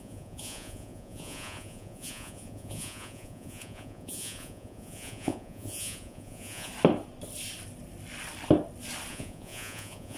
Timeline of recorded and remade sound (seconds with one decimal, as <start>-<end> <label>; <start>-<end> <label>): 0.0-6.7 remade; 6.7-9.1 recorded; 9.1-10.2 remade